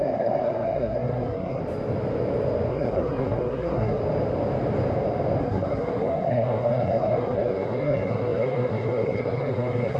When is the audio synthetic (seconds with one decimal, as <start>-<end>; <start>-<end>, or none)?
0.0-1.6; 2.7-4.0; 5.4-10.0